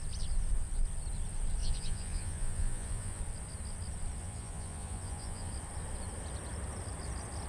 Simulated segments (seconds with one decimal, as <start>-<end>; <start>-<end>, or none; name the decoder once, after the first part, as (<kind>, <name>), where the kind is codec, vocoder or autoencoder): 1.6-3.2 (vocoder, Vocos); 4.2-5.5